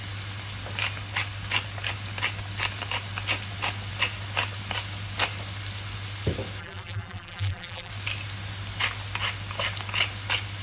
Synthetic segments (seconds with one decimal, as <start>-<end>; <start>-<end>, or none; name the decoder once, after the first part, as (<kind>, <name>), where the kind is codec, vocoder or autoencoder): 6.6-7.9 (vocoder, BigVGAN v2)